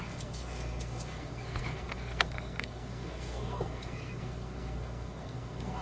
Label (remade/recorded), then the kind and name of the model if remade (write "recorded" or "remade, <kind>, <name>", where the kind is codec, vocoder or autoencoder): remade, codec, SNAC